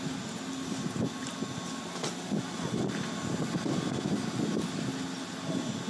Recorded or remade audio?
recorded